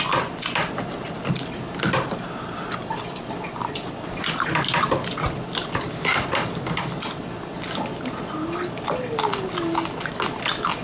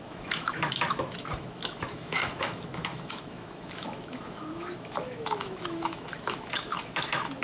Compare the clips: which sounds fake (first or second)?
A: second